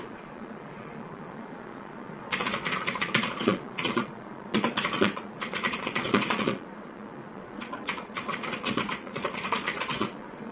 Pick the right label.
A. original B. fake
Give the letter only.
B